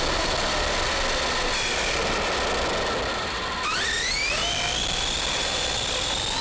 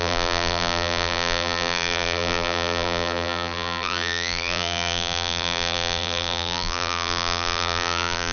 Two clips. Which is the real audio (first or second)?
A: first